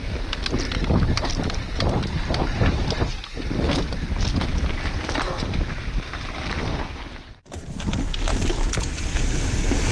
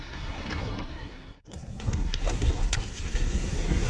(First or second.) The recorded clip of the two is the first